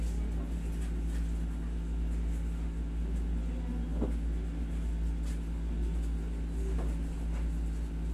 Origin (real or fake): real